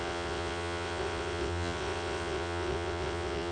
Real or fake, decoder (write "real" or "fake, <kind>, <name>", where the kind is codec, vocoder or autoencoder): fake, vocoder, WaveNeXt